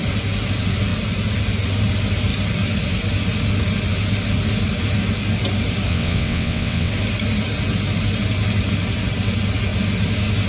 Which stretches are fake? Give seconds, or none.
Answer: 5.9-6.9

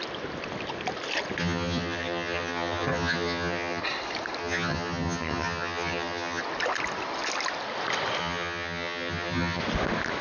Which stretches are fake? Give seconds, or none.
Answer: 1.4-3.8; 4.4-6.4; 8.2-9.6